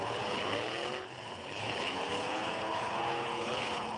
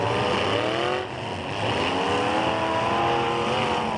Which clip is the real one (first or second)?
second